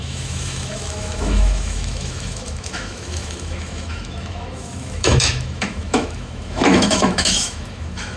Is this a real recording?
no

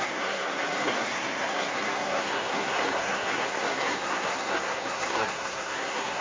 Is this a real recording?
no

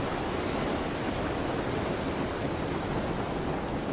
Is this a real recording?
yes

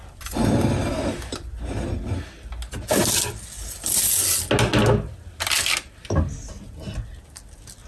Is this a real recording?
yes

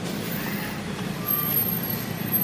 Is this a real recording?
yes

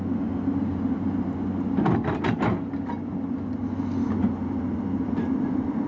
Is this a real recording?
yes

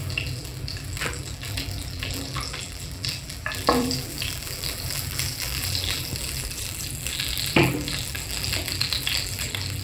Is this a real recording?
no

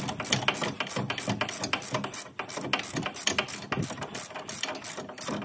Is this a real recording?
yes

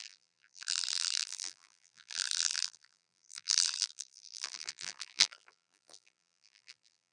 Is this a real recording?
no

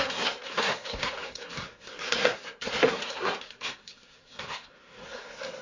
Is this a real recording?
no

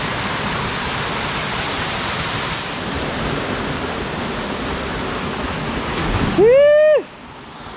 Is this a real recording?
yes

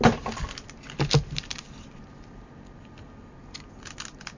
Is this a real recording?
yes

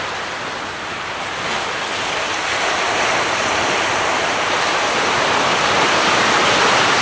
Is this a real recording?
yes